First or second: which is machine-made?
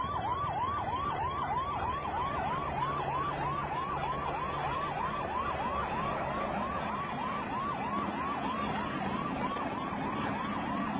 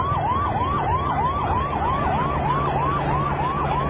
first